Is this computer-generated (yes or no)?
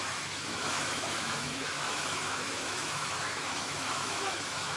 yes